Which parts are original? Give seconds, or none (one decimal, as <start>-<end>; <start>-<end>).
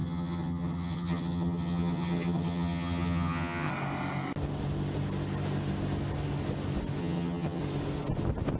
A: 3.7-7.0; 7.6-8.6